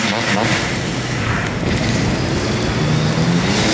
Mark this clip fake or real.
real